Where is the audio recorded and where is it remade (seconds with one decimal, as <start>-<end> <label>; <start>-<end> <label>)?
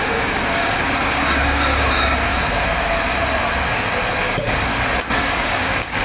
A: 0.0-2.3 remade; 2.3-4.2 recorded; 4.2-4.7 remade; 4.7-5.2 recorded; 5.2-6.0 remade